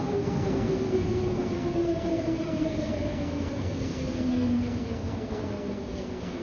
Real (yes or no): no